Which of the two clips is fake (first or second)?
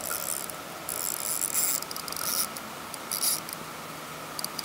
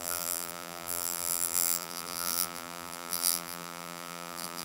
second